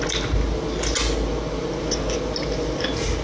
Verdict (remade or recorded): recorded